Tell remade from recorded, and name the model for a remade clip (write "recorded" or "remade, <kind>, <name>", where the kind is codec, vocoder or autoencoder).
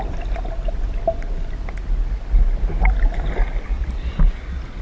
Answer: recorded